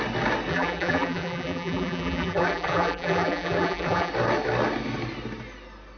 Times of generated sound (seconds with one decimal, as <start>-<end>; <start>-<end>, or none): 0.5-4.1